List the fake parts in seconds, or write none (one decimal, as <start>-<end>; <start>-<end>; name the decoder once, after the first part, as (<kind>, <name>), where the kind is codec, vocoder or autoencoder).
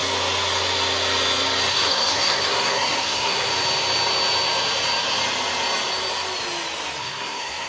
1.7-3.5 (codec, SNAC); 7.0-7.7